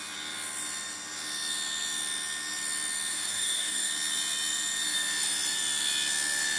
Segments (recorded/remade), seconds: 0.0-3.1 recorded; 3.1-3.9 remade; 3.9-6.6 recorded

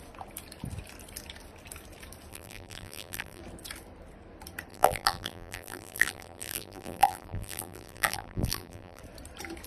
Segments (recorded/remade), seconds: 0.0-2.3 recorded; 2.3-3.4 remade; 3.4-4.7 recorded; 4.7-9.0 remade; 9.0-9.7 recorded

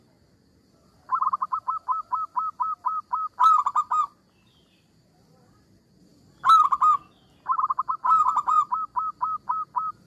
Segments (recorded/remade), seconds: 0.0-10.1 recorded

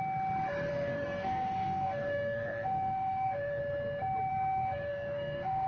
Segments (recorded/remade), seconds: 0.0-0.7 recorded; 0.7-3.6 remade; 3.6-4.3 recorded; 4.3-5.7 remade

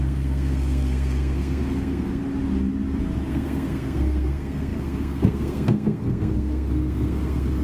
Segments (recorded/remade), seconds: 0.0-2.2 remade; 2.2-3.3 recorded; 3.3-7.6 remade

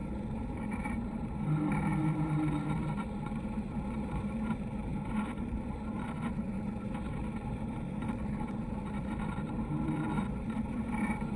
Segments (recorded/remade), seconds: 0.0-11.4 remade

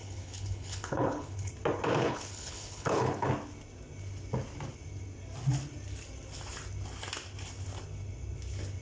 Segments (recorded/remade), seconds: 0.0-1.5 remade; 1.5-2.0 recorded; 2.0-3.3 remade; 3.3-8.8 recorded

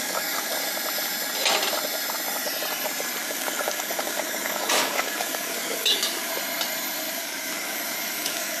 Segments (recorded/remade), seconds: 0.0-0.5 remade; 0.5-3.2 recorded; 3.2-6.3 remade; 6.3-7.1 recorded; 7.1-8.6 remade